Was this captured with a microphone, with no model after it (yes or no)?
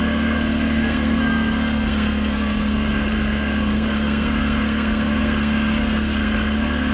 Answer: no